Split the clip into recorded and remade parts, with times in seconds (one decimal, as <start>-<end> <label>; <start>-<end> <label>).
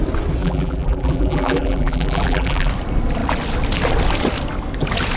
0.0-0.4 recorded; 0.4-2.7 remade; 2.7-5.2 recorded